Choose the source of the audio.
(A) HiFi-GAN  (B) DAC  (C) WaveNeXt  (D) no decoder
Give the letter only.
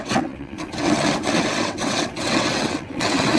C